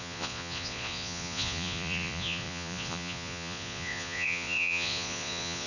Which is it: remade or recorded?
remade